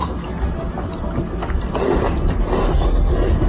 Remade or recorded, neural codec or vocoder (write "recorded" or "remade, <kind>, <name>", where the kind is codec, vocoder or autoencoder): recorded